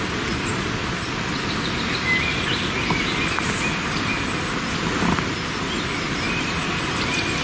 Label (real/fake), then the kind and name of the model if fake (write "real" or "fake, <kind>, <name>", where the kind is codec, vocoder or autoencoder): real